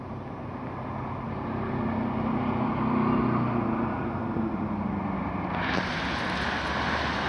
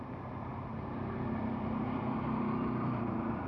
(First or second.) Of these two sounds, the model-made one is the second